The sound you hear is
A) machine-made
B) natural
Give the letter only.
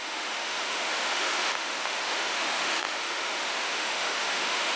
A